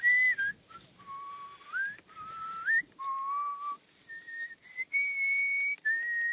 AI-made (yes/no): no